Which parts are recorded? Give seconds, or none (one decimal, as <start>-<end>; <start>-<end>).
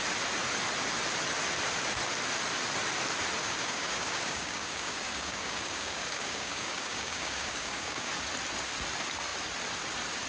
0.0-3.4; 8.1-10.3